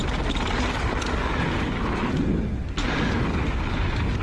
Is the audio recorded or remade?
recorded